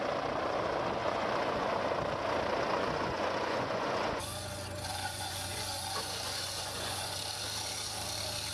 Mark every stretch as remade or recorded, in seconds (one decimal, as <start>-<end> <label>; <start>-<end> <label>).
0.0-1.0 recorded; 1.0-1.8 remade; 1.8-2.7 recorded; 2.7-7.2 remade; 7.2-8.5 recorded